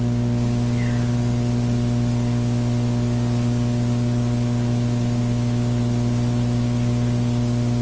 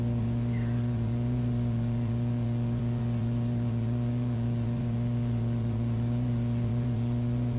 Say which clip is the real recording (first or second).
first